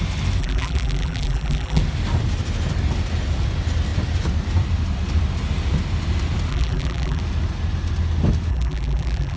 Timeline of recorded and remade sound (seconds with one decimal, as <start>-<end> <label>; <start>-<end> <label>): 0.0-0.4 recorded; 0.4-1.8 remade; 1.8-6.5 recorded; 6.5-7.2 remade; 7.2-8.5 recorded; 8.5-9.4 remade